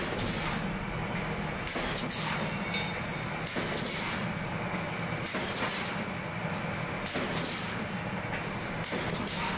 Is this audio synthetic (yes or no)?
no